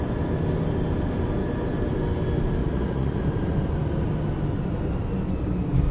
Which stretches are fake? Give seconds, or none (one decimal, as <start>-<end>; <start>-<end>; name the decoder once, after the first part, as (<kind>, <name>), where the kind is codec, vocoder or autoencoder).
2.6-3.2 (vocoder, Vocos)